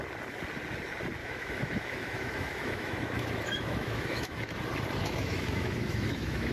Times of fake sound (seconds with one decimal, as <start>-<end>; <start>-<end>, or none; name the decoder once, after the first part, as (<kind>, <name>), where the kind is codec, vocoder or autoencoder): 1.2-4.6 (autoencoder, DAC-VAE); 5.0-6.5